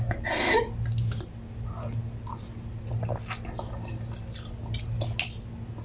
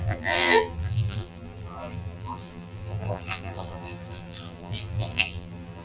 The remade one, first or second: second